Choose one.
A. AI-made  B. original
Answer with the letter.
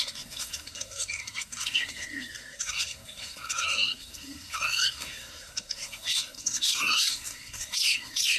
A